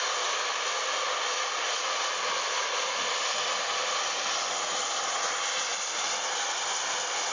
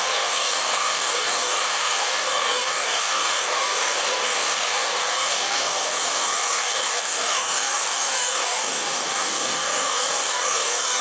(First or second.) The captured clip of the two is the first